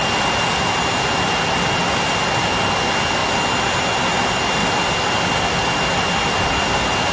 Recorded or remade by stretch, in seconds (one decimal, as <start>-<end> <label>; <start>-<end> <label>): 0.0-7.1 recorded